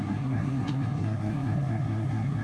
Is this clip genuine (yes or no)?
no